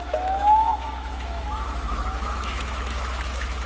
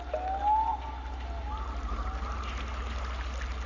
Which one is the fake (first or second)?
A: first